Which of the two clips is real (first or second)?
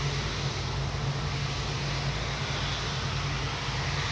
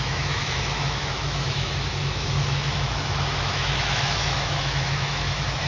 first